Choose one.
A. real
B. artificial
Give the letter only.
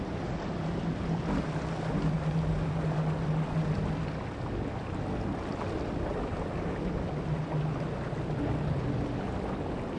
A